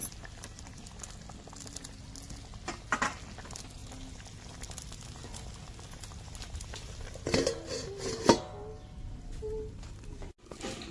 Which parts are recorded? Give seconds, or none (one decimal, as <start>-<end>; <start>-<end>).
0.0-10.9